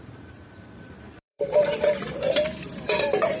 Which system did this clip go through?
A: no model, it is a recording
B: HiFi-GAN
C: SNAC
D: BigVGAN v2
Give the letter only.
D